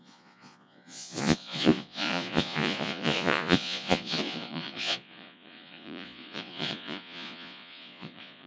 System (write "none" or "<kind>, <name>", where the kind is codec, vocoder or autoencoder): vocoder, Vocos